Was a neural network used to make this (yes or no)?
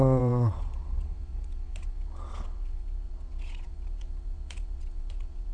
yes